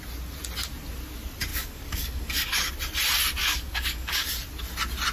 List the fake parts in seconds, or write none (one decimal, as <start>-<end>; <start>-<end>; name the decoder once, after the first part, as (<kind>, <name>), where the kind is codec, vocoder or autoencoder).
1.5-2.7 (codec, DAC); 3.4-4.3

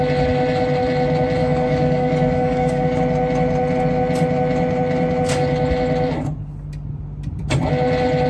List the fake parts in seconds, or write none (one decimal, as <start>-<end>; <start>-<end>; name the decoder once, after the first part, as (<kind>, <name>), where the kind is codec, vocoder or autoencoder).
1.4-3.0 (codec, DAC)